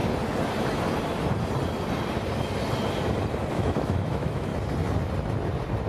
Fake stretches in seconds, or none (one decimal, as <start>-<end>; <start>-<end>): 3.5-4.5